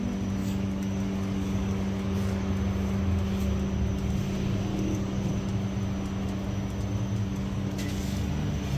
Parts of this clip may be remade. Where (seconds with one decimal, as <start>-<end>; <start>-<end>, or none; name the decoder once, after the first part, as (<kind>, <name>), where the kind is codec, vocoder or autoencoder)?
0.4-2.5 (codec, DAC); 4.7-5.3; 7.2-8.3